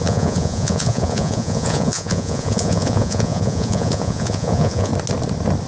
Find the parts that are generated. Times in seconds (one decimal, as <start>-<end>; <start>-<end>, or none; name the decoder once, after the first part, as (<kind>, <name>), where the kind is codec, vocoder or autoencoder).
0.0-4.9 (vocoder, Vocos)